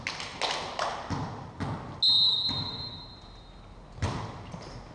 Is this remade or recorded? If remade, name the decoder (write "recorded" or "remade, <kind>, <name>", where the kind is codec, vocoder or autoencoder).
recorded